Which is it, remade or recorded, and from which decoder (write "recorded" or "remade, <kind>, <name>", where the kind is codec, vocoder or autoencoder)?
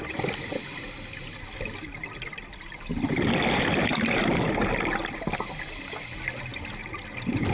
recorded